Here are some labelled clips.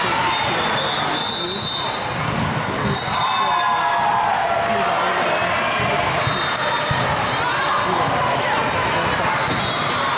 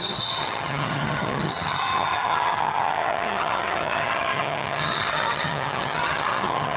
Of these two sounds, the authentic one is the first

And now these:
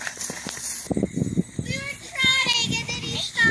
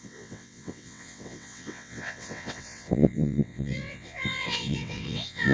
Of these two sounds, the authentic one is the first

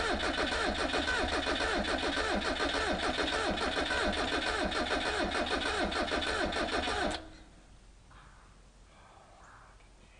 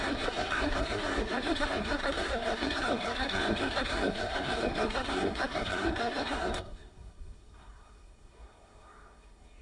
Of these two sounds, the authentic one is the first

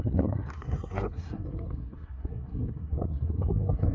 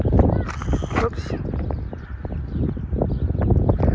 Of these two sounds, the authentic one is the second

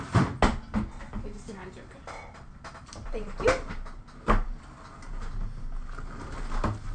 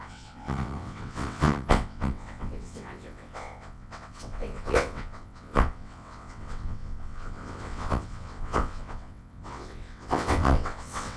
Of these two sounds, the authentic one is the first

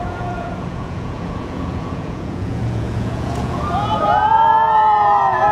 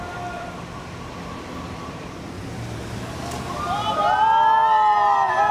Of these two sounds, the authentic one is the second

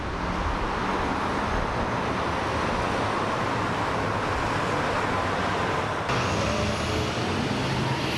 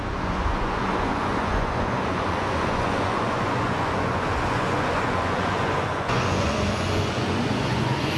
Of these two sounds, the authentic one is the first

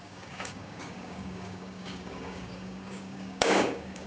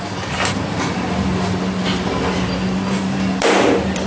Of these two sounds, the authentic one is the second